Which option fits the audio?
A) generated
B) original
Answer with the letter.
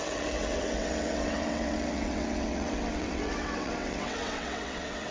A